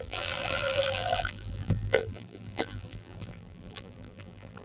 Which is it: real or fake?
fake